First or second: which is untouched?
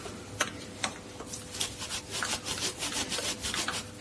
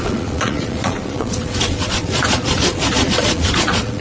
first